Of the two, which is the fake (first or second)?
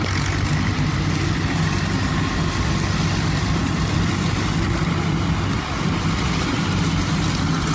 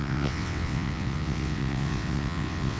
second